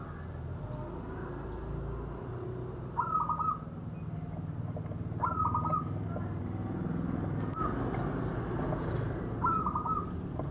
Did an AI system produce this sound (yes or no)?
no